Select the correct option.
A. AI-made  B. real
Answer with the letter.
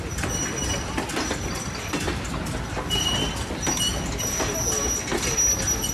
B